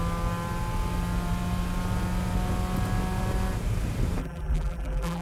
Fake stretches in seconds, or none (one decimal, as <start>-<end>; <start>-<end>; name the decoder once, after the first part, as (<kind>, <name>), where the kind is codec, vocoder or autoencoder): 4.2-5.2 (vocoder, BigVGAN v2)